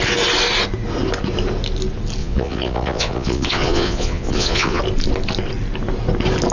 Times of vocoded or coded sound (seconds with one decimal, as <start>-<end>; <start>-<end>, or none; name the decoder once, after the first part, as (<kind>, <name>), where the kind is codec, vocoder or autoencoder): 2.2-4.8 (vocoder, Vocos)